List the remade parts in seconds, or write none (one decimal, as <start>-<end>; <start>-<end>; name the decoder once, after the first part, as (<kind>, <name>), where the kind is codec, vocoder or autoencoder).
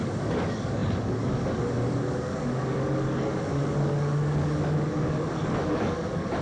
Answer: 0.0-6.4 (codec, DAC)